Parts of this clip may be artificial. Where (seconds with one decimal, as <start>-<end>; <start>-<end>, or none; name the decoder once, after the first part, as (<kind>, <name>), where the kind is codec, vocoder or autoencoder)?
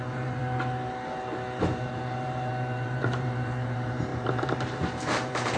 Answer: 0.0-0.4 (vocoder, BigVGAN v2); 1.6-5.6